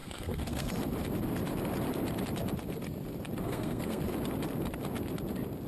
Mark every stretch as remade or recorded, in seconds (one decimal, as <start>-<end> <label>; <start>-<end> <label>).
0.0-0.7 remade; 0.7-3.4 recorded; 3.4-4.0 remade; 4.0-5.7 recorded